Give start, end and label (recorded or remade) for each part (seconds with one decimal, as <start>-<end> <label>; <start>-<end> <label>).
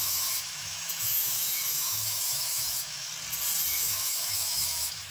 0.0-3.1 remade; 3.1-3.7 recorded; 3.7-5.1 remade